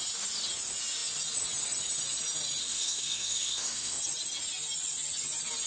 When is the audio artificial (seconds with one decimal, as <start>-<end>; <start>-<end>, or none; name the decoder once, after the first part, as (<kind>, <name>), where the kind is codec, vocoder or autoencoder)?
2.6-4.0 (codec, SNAC)